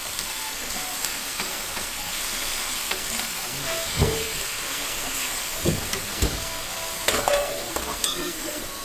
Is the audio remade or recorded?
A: remade